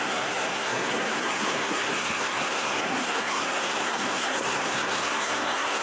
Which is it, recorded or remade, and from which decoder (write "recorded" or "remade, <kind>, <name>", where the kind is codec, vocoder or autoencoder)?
remade, codec, SNAC